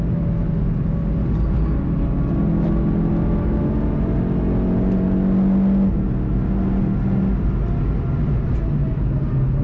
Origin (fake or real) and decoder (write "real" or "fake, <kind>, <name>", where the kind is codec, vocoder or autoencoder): real